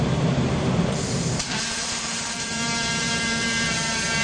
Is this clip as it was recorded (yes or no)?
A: no